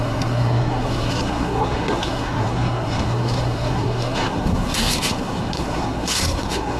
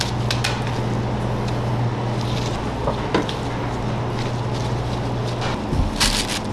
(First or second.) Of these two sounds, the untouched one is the second